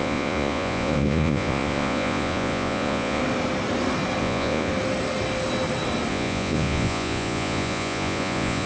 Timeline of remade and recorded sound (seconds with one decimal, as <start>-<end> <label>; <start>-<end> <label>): 0.0-3.2 remade; 3.2-4.2 recorded; 4.2-4.7 remade; 4.7-6.1 recorded; 6.1-8.7 remade

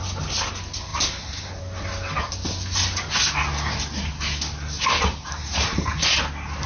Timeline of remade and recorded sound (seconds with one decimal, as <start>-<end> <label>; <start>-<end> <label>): 0.0-5.4 recorded; 5.4-6.2 remade; 6.2-6.7 recorded

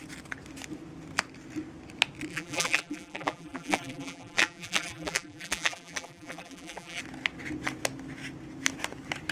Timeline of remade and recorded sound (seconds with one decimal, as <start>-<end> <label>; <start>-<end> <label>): 0.0-2.3 recorded; 2.3-7.0 remade; 7.0-9.3 recorded

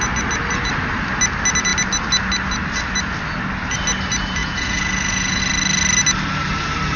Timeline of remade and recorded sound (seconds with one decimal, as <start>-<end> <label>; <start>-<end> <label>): 0.0-4.4 recorded; 4.4-5.4 remade; 5.4-7.0 recorded

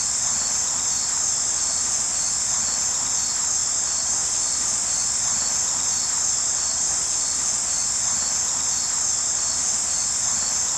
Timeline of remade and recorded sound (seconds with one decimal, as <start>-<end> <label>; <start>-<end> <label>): 0.0-10.8 recorded